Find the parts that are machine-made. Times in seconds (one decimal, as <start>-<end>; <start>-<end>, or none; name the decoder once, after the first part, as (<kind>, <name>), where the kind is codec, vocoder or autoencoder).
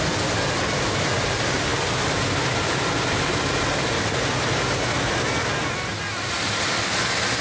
1.7-3.3 (vocoder, BigVGAN v2)